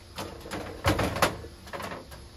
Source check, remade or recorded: recorded